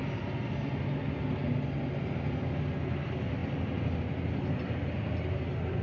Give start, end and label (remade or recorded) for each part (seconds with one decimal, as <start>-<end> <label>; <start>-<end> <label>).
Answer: 0.0-5.8 recorded